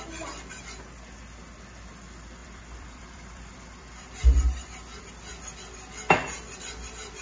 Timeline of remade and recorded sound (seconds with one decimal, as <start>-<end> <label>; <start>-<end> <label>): 0.0-2.4 recorded; 2.4-5.0 remade; 5.0-7.2 recorded